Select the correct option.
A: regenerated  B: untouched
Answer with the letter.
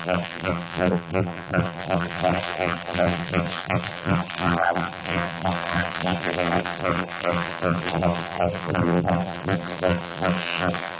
A